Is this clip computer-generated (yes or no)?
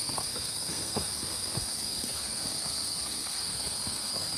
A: yes